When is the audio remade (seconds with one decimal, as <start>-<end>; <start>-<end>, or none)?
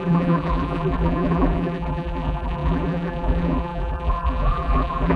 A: 0.0-5.2